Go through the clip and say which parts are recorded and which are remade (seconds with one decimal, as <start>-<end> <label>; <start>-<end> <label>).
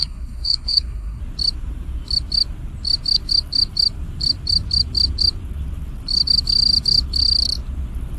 0.0-1.2 remade; 1.2-8.2 recorded